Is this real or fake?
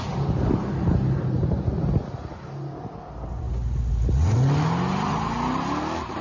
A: real